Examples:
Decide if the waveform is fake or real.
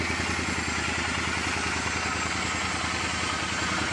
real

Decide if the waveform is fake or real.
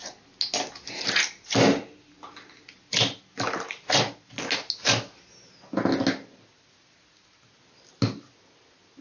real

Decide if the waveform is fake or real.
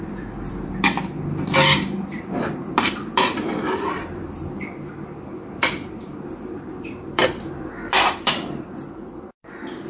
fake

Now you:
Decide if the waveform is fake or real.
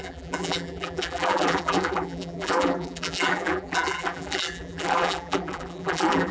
fake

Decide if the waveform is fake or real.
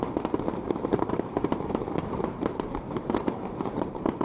fake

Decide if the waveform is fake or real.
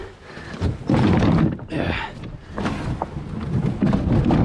real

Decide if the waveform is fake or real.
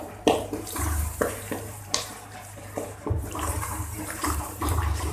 fake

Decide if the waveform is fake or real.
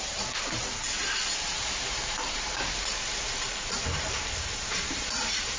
fake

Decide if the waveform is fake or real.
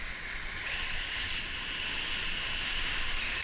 real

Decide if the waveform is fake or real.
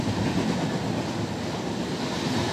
real